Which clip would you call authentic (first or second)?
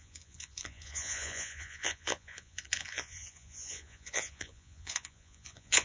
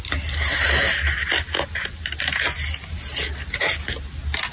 second